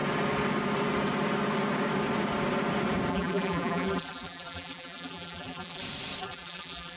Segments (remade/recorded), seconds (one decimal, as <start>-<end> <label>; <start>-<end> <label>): 0.0-3.1 recorded; 3.1-5.8 remade; 5.8-6.2 recorded; 6.2-7.0 remade

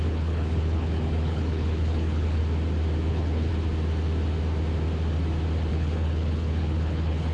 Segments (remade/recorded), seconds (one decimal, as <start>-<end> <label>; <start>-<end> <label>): 0.0-2.4 remade; 2.4-3.1 recorded; 3.1-3.5 remade; 3.5-5.7 recorded; 5.7-7.3 remade

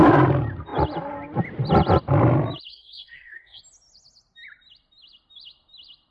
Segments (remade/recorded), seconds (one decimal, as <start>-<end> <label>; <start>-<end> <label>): 0.0-2.7 recorded; 2.7-3.6 remade; 3.6-6.1 recorded

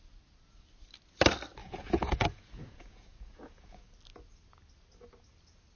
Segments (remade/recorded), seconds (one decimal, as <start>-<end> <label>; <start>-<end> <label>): 0.0-1.6 recorded; 1.6-3.9 remade; 3.9-5.8 recorded